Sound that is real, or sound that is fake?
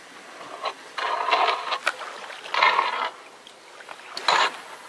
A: real